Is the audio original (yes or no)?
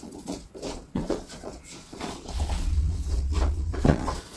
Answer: no